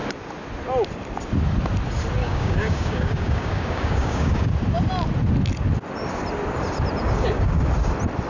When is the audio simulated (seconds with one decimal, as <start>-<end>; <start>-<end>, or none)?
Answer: 2.2-4.5; 7.0-7.7